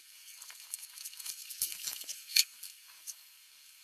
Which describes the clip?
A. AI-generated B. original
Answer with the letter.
A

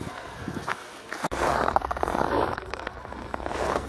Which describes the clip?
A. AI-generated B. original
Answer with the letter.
A